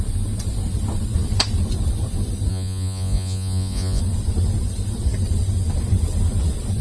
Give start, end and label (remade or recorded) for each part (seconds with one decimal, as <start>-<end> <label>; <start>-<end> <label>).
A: 0.0-2.5 recorded; 2.5-4.0 remade; 4.0-6.8 recorded